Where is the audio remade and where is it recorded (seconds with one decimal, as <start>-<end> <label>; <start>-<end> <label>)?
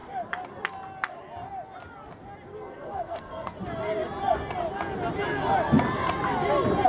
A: 0.0-2.5 recorded; 2.5-3.5 remade; 3.5-6.9 recorded